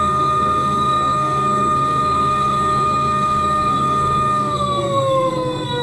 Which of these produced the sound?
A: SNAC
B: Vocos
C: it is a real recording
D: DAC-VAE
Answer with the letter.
A